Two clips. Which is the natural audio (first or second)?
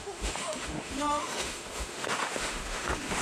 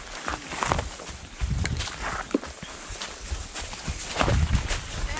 second